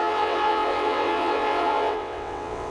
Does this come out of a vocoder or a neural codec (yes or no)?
yes